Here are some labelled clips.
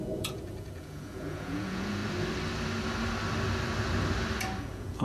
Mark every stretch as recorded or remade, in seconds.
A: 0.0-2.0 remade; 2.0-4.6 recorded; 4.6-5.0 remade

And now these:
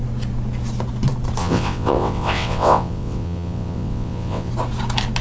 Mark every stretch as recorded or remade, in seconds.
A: 0.0-1.4 recorded; 1.4-4.5 remade; 4.5-5.2 recorded